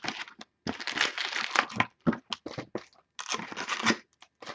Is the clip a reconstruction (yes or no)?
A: no